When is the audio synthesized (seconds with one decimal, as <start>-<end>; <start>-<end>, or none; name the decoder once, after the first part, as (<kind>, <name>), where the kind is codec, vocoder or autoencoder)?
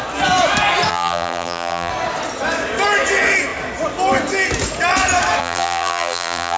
0.9-1.9 (vocoder, BigVGAN v2); 5.4-6.6